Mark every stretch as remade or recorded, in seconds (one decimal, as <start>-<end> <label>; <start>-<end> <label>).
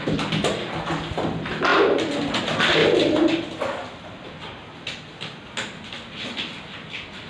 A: 0.0-7.3 recorded